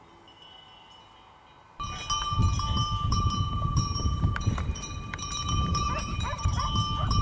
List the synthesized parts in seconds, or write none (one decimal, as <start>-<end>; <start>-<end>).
2.4-6.7